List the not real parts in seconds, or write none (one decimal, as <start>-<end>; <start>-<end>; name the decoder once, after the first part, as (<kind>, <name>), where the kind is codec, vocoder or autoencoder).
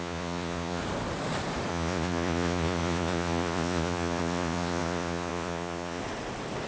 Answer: 0.0-0.8 (vocoder, Vocos); 1.7-6.0